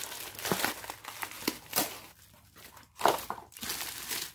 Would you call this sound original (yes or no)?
yes